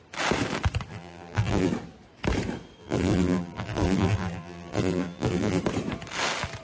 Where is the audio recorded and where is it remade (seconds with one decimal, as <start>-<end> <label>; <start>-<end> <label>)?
0.0-0.9 recorded; 0.9-1.7 remade; 1.7-2.8 recorded; 2.8-5.6 remade; 5.6-6.6 recorded